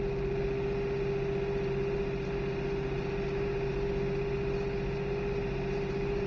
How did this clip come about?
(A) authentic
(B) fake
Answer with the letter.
A